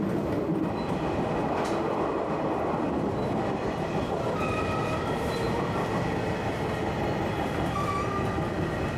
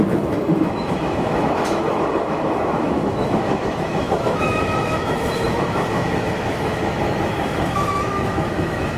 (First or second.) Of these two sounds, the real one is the first